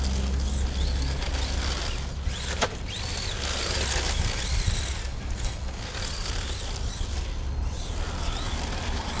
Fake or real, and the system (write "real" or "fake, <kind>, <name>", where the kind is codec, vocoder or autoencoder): real